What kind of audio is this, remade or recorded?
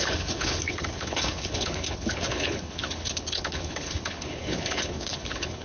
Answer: remade